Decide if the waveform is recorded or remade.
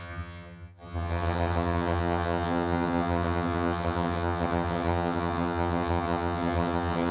remade